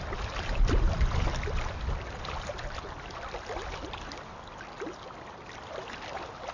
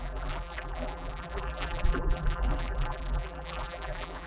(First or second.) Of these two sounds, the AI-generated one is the second